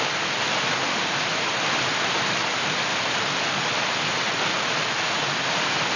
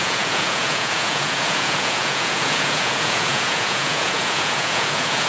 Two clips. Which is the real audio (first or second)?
first